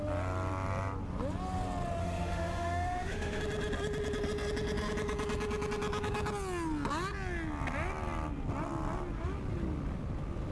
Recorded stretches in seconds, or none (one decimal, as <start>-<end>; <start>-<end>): 0.0-2.0; 3.4-10.5